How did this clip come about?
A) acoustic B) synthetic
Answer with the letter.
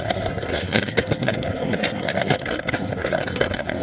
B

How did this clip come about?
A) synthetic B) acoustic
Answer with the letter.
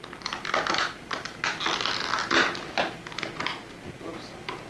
B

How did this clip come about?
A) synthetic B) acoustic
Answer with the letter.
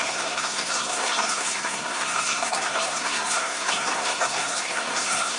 A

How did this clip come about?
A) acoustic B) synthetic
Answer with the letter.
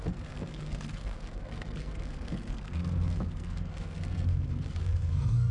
B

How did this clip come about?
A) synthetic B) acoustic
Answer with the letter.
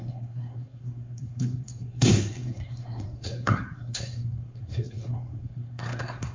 A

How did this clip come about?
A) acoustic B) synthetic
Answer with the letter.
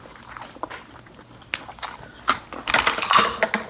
A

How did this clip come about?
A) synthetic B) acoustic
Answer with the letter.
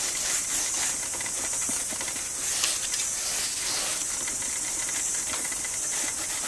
B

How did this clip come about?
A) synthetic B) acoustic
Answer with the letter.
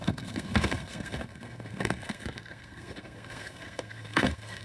A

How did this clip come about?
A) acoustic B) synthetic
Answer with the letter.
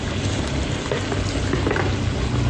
A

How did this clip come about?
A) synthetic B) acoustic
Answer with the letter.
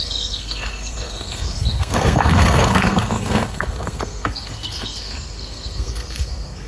A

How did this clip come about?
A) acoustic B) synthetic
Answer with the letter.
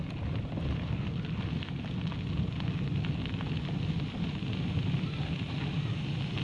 A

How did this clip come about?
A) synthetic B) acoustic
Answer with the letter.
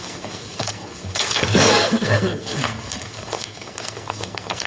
A